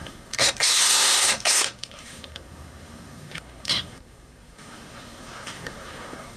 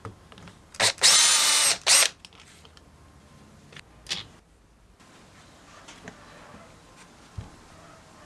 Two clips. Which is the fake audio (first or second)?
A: first